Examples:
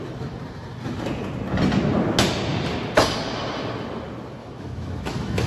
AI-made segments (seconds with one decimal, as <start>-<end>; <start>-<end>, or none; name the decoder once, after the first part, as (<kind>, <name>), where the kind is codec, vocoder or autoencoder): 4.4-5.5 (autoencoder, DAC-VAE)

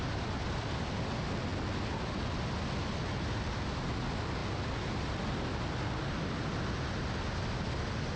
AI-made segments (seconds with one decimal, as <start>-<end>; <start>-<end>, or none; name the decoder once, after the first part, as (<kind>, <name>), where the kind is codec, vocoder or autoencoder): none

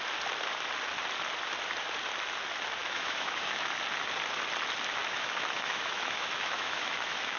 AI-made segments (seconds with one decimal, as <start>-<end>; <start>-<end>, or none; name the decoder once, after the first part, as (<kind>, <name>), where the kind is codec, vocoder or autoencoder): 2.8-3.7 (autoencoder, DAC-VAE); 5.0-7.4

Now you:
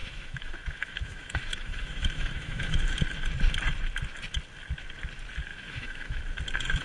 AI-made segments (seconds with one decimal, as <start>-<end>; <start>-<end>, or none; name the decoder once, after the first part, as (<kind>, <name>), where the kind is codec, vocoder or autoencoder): 0.0-2.8 (autoencoder, DAC-VAE); 5.5-6.2

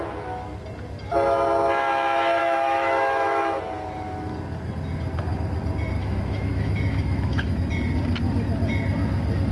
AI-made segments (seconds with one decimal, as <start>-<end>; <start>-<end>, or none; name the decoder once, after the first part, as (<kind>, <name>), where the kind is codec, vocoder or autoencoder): 2.4-3.6 (autoencoder, DAC-VAE); 6.0-7.6

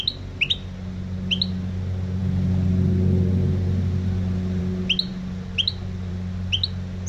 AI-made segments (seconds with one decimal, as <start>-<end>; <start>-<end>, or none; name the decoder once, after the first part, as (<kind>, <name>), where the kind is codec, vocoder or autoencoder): none

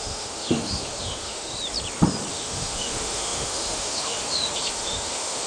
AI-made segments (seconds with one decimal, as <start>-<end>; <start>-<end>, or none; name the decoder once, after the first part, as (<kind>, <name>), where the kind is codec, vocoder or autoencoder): 0.0-1.5 (autoencoder, DAC-VAE); 2.3-5.5

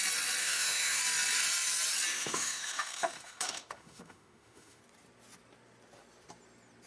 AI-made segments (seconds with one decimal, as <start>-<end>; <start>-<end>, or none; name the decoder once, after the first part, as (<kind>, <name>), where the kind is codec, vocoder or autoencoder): 0.4-1.0 (autoencoder, DAC-VAE); 2.1-4.8